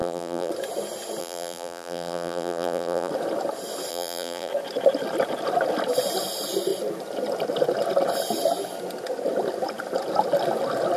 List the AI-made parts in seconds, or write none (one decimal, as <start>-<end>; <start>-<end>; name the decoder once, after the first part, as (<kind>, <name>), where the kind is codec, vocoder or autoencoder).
0.0-0.5 (vocoder, BigVGAN v2); 1.2-3.1; 3.9-4.5